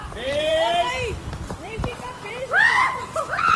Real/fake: fake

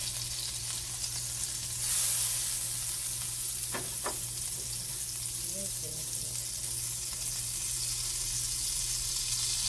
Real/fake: real